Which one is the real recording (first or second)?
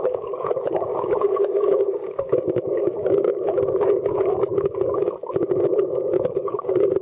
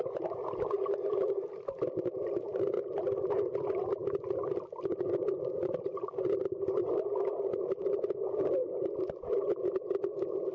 second